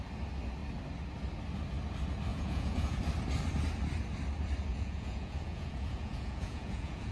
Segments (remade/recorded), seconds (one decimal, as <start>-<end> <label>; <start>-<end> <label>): 0.0-2.3 recorded; 2.3-3.0 remade; 3.0-4.7 recorded; 4.7-7.1 remade